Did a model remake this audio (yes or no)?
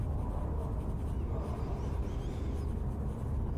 no